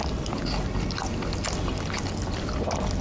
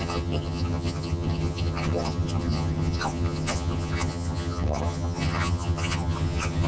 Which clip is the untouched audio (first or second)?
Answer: first